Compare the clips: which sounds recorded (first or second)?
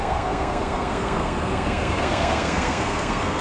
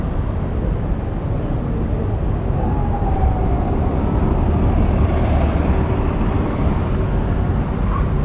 second